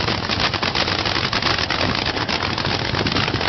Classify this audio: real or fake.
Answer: real